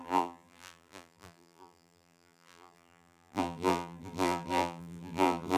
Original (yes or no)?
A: no